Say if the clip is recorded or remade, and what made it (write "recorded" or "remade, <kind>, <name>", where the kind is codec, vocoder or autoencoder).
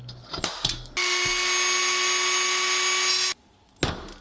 recorded